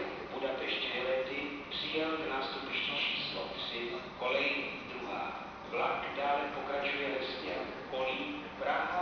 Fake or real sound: real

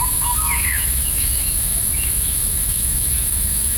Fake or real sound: fake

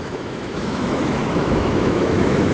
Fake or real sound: fake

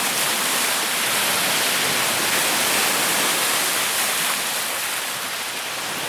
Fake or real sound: real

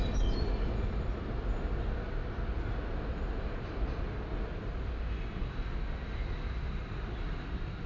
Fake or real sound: real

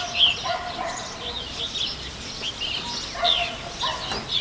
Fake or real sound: real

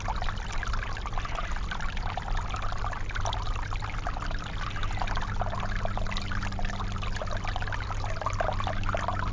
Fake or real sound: real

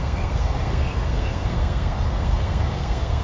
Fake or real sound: fake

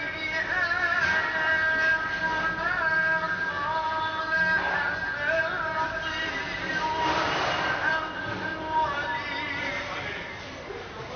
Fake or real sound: real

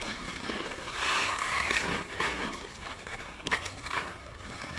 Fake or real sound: fake